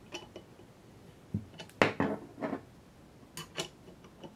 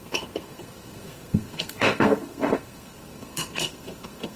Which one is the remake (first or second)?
second